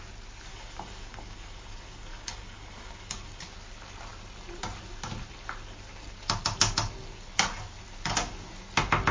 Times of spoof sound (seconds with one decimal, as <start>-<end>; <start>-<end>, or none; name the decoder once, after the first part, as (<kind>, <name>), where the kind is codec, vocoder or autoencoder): 0.5-3.4 (codec, DAC)